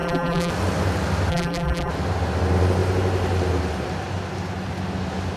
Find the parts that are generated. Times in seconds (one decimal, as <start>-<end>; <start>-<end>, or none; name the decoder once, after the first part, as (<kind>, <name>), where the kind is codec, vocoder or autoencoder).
0.0-0.5 (vocoder, BigVGAN v2); 1.3-1.9